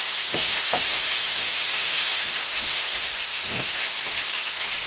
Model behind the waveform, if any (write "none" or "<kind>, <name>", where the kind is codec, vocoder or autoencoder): autoencoder, DAC-VAE